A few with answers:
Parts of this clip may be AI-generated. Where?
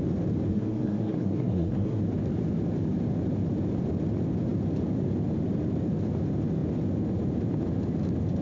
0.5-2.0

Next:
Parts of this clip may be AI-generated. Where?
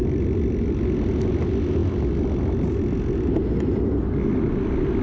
none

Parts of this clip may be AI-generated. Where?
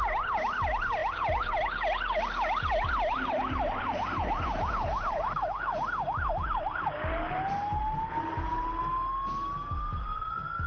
none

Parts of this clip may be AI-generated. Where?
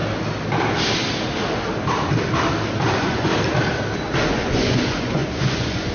2.9-3.3; 4.3-5.9